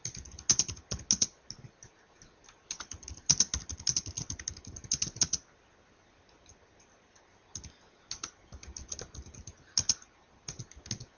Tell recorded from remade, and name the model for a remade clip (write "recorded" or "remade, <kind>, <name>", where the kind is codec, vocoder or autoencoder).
recorded